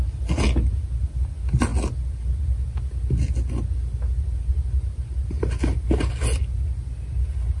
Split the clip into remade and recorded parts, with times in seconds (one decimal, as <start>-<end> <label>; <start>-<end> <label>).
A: 0.0-7.6 recorded